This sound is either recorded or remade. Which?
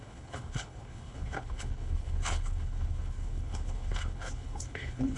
remade